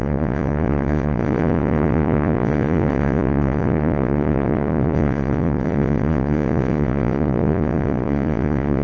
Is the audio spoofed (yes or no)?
yes